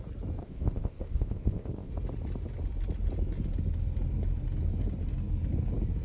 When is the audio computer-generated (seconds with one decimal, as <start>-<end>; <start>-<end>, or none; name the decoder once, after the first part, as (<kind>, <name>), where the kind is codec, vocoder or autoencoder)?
0.4-1.9 (codec, ZipCodec)

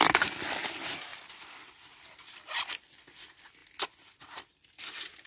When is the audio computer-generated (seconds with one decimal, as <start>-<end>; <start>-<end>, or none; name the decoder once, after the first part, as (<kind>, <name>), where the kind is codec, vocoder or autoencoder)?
none

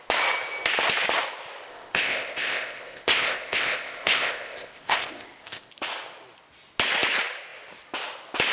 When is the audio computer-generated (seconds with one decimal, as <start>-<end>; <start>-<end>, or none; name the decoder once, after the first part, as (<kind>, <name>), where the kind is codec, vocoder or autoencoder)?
1.7-5.7 (codec, ZipCodec)

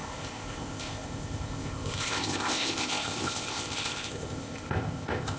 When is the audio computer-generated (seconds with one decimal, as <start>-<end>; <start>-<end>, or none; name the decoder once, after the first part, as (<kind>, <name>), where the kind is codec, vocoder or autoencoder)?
0.0-5.4 (codec, ZipCodec)

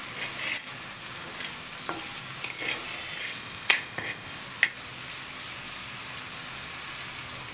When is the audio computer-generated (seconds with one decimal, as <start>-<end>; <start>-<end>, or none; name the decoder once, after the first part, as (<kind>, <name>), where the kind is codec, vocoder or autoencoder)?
3.2-4.4 (codec, ZipCodec)

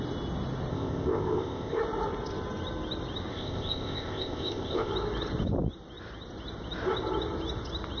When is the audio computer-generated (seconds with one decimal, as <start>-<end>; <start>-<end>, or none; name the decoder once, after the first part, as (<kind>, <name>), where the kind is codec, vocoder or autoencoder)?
0.7-1.8 (codec, ZipCodec); 3.3-4.9

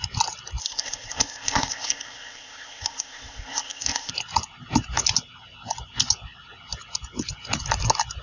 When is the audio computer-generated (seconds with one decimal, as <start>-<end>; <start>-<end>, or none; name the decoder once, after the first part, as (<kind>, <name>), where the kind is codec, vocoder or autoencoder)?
0.6-4.1 (codec, ZipCodec)